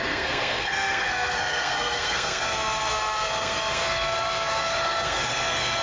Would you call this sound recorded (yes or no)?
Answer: no